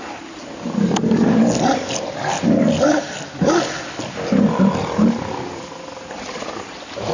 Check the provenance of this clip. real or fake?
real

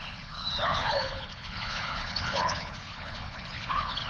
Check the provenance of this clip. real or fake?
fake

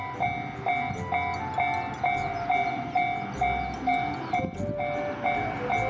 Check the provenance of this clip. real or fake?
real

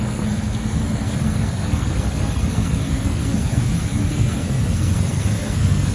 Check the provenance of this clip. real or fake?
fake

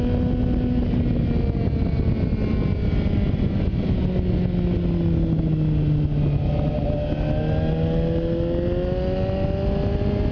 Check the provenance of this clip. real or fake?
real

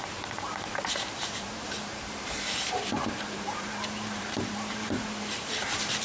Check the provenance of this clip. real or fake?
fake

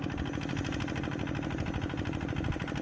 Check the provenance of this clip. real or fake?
real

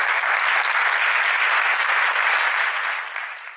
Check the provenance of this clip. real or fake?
real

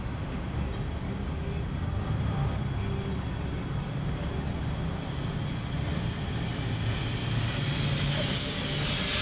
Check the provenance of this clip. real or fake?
real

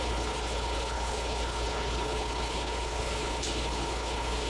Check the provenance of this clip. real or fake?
fake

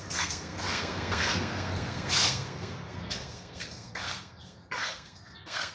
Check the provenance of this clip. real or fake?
fake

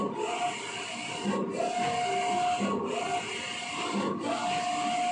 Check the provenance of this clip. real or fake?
real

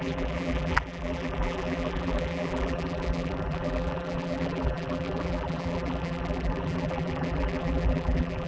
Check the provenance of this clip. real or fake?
fake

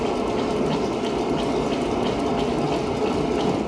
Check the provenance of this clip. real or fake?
real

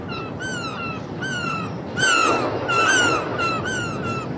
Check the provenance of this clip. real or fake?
real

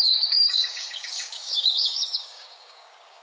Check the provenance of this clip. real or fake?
fake